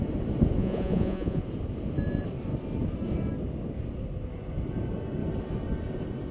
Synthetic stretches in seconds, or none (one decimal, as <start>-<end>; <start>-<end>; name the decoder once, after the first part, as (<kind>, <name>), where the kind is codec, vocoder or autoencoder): 0.6-1.4 (vocoder, Vocos)